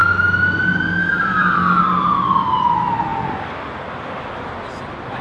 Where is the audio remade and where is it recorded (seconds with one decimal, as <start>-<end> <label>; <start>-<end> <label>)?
0.0-1.0 recorded; 1.0-1.8 remade; 1.8-5.2 recorded